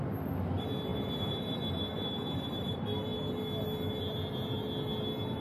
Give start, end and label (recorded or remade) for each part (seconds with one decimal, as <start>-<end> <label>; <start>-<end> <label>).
0.0-0.9 recorded; 0.9-2.7 remade; 2.7-5.4 recorded